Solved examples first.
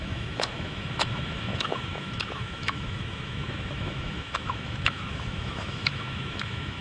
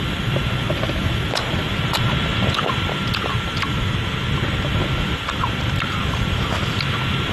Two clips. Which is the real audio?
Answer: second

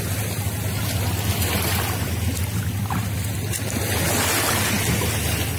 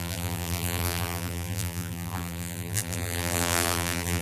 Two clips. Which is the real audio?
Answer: first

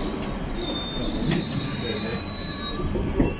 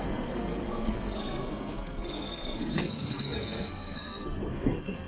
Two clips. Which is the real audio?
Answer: first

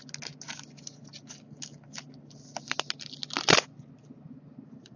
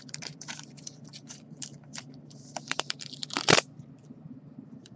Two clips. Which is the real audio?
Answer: first